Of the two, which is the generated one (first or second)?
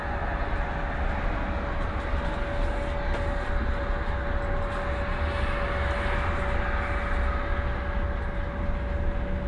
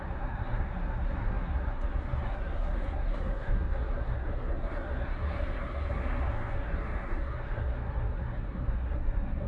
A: second